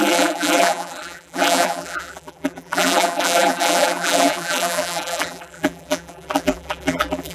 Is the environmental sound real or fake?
fake